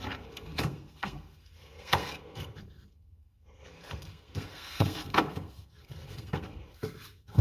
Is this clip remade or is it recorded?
remade